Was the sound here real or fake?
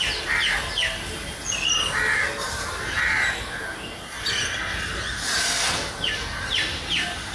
real